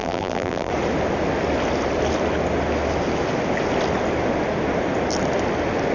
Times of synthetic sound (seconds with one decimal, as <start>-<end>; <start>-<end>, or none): 0.0-0.7